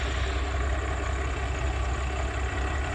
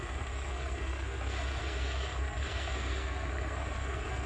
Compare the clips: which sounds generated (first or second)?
second